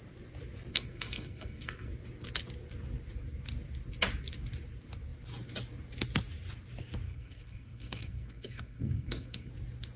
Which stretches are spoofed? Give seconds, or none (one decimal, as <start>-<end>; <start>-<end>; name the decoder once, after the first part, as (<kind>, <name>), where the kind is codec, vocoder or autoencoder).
0.7-1.9 (codec, SNAC); 7.1-9.5